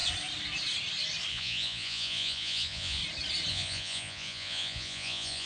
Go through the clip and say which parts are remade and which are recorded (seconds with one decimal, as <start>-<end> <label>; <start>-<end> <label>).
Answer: 0.0-1.3 recorded; 1.3-3.0 remade; 3.0-3.5 recorded; 3.5-5.5 remade